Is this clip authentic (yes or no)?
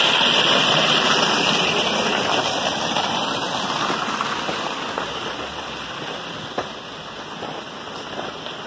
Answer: yes